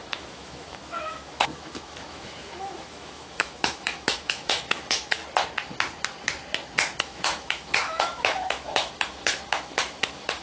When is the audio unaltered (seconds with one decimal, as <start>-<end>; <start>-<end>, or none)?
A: 5.2-7.0